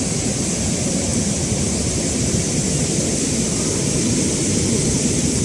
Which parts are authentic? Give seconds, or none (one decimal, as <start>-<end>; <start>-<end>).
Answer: 0.0-5.4